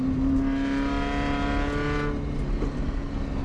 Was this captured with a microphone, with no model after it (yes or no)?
yes